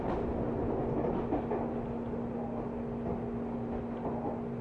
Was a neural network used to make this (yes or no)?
no